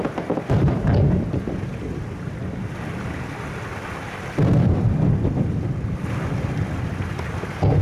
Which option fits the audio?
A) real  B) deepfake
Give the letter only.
A